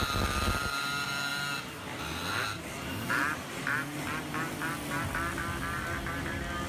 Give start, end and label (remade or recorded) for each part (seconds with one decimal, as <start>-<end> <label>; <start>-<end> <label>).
0.0-6.7 recorded